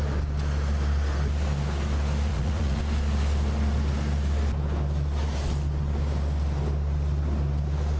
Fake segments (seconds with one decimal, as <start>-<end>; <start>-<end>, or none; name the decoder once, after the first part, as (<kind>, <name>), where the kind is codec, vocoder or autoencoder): 2.3-2.8 (vocoder, Vocos)